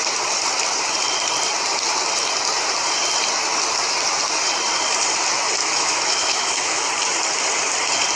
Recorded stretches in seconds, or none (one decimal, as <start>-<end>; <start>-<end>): 0.0-5.6; 6.9-8.2